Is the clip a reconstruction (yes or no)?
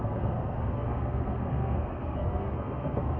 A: yes